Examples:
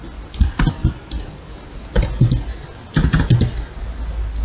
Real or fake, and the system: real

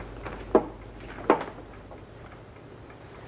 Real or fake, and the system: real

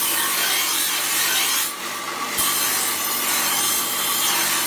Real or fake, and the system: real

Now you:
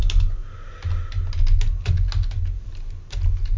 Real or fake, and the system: real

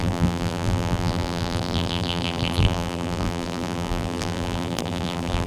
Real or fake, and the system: fake, vocoder, BigVGAN v2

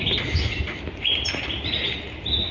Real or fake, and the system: real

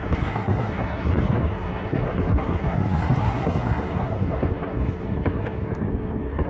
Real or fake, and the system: fake, codec, SNAC